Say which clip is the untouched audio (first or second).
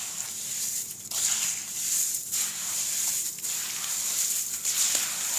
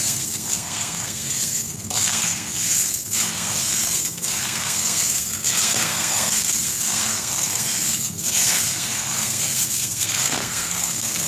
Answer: first